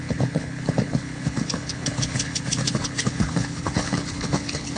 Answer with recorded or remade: remade